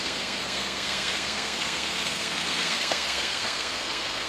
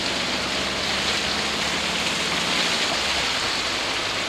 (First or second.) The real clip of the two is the second